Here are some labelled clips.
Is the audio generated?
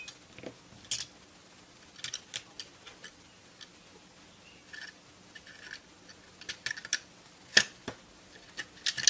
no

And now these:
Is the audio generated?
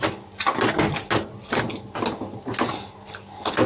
no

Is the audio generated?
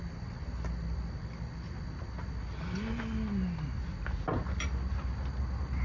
no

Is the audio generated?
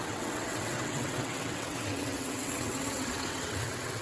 yes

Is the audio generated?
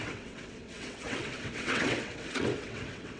yes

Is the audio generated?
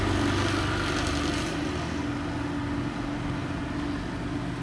no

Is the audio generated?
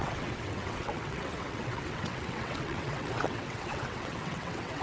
yes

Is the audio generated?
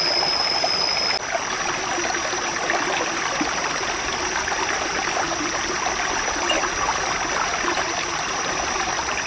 no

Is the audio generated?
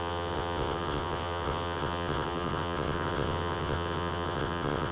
yes